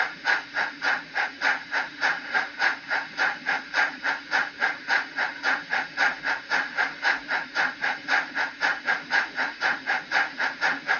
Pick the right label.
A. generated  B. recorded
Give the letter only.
A